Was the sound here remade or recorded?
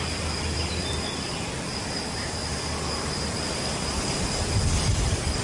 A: remade